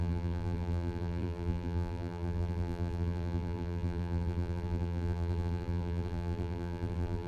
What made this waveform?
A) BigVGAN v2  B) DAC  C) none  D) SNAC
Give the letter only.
A